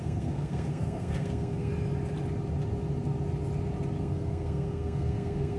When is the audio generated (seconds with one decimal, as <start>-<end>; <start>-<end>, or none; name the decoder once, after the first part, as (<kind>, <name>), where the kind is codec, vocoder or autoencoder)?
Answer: 0.0-1.7 (codec, SNAC); 4.0-5.6